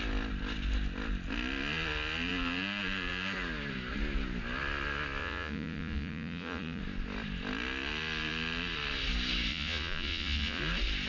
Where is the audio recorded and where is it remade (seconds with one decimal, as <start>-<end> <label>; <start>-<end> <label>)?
0.0-5.2 recorded; 5.2-6.8 remade; 6.8-9.5 recorded; 9.5-10.6 remade; 10.6-11.1 recorded